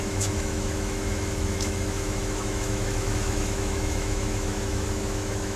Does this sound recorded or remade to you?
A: remade